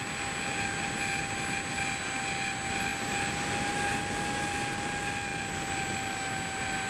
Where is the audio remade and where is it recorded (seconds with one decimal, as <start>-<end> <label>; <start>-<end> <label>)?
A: 0.0-6.9 recorded